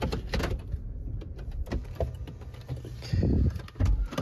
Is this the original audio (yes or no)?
yes